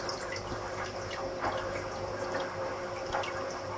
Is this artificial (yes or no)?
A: yes